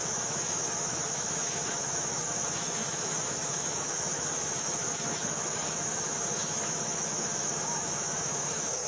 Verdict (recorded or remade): remade